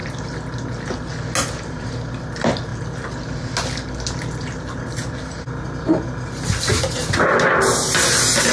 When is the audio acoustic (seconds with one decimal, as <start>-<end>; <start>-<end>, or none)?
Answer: 0.0-8.5